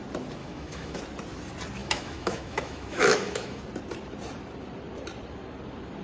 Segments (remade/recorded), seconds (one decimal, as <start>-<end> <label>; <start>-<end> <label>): 0.0-0.4 recorded; 0.4-1.0 remade; 1.0-1.8 recorded; 1.8-3.6 remade; 3.6-6.0 recorded